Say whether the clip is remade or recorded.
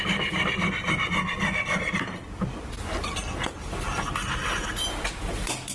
recorded